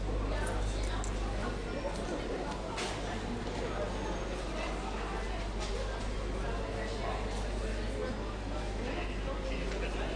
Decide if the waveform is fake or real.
real